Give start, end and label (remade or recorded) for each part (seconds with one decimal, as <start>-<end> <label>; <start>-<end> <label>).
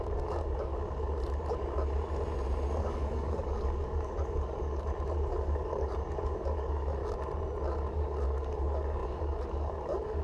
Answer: 0.0-0.7 remade; 0.7-2.8 recorded; 2.8-7.0 remade; 7.0-7.8 recorded; 7.8-10.2 remade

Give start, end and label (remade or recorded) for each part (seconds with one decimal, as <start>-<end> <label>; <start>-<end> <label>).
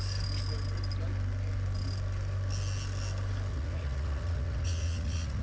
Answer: 0.0-3.5 recorded; 3.5-5.4 remade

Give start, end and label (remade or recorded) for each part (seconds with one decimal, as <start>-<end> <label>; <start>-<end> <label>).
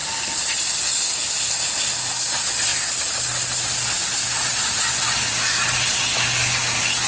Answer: 0.0-7.1 recorded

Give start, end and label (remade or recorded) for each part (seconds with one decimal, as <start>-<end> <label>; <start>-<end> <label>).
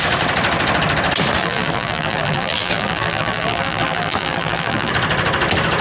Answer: 0.0-1.4 recorded; 1.4-4.9 remade; 4.9-5.8 recorded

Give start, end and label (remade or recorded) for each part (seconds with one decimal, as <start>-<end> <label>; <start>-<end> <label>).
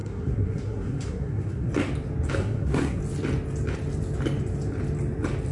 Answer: 0.0-1.7 remade; 1.7-2.4 recorded; 2.4-3.0 remade; 3.0-5.5 recorded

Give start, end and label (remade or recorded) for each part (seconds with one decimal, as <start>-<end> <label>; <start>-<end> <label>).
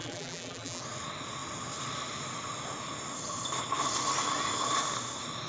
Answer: 0.0-0.8 remade; 0.8-5.5 recorded